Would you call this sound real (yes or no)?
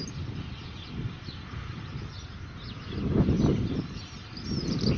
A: yes